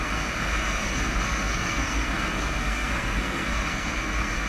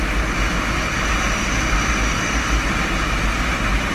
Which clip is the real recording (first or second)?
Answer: second